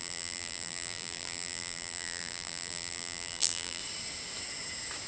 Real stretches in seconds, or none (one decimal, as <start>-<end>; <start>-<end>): 3.8-5.1